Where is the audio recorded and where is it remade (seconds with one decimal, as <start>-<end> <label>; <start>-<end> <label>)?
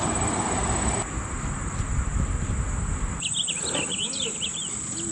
0.0-5.1 recorded